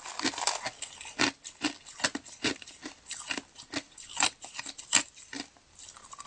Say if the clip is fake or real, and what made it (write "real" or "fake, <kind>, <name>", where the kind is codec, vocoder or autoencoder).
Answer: real